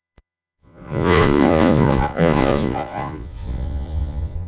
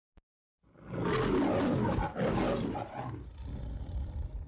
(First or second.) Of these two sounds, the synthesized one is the first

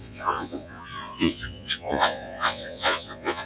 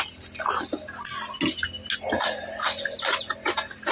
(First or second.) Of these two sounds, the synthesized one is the first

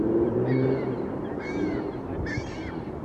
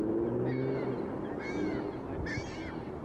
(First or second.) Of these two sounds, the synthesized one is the first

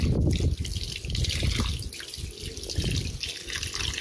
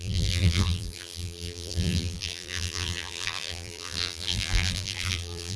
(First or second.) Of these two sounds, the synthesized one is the second